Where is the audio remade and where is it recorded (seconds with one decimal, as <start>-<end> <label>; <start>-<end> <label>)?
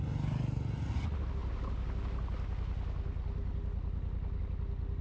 0.0-5.0 recorded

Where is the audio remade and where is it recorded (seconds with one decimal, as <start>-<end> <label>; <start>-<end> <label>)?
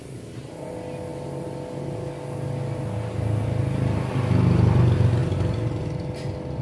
0.0-6.6 recorded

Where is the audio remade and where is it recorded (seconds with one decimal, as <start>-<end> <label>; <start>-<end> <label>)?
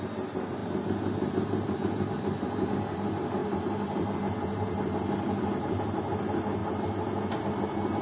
0.0-8.0 recorded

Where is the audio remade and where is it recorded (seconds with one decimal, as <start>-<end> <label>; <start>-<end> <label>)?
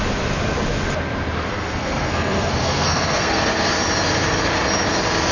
0.0-1.5 recorded; 1.5-3.6 remade; 3.6-5.3 recorded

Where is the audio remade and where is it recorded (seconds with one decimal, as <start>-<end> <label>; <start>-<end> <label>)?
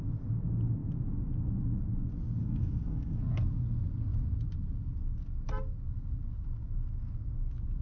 0.0-2.4 recorded; 2.4-3.2 remade; 3.2-7.8 recorded